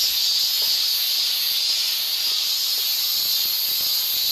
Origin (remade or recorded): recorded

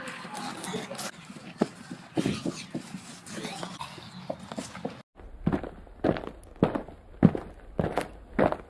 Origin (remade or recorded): recorded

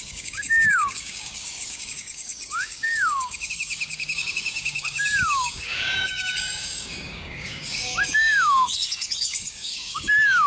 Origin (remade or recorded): remade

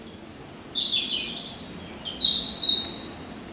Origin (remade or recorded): recorded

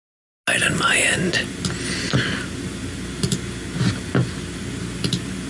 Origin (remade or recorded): recorded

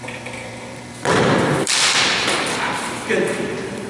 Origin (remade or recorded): remade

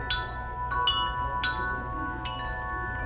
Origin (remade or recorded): recorded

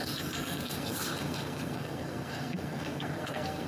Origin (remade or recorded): remade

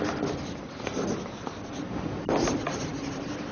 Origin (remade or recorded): recorded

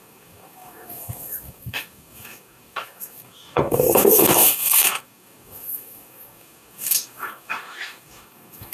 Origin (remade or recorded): remade